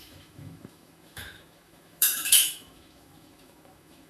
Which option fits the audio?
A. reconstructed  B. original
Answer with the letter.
A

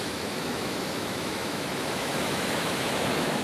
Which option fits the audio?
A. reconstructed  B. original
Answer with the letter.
A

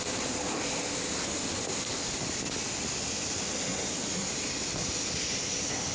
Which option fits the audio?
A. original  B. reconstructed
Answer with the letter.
A